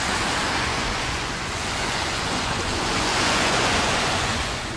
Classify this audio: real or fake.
fake